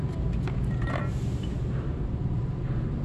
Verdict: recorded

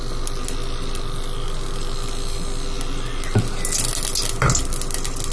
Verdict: recorded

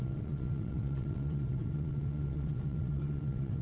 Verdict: remade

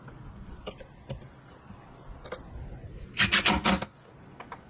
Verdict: recorded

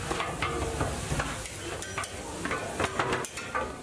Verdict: recorded